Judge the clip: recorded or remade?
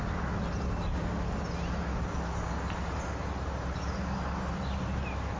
recorded